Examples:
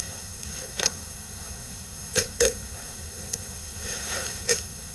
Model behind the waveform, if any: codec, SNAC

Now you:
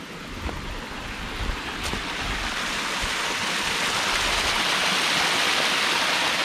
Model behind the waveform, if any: none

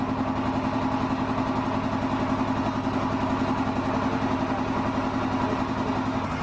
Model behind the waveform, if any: none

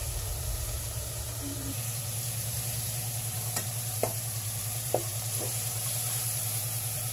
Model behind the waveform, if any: vocoder, BigVGAN v2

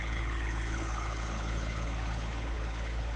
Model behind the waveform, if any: codec, HILCodec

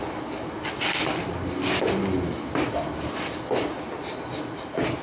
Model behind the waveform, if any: none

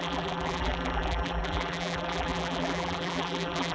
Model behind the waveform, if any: vocoder, BigVGAN v2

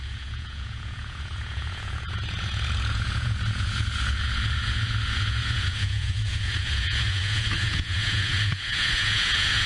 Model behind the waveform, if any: vocoder, Vocos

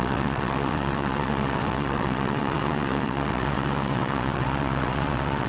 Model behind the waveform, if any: vocoder, WaveNeXt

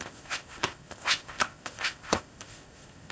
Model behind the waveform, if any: codec, ZipCodec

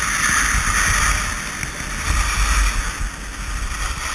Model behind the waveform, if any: none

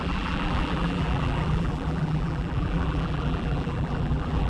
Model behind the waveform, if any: vocoder, BigVGAN v2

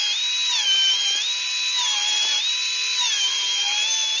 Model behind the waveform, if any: none